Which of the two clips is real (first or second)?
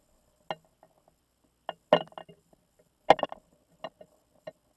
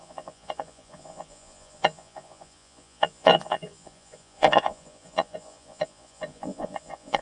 first